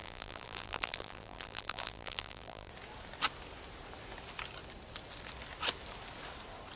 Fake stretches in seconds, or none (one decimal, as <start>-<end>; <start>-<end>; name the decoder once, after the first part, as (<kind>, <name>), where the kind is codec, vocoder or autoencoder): 0.0-2.7 (vocoder, BigVGAN v2)